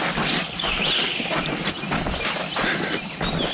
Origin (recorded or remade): recorded